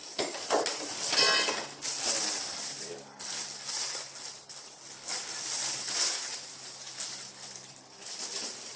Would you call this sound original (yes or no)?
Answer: yes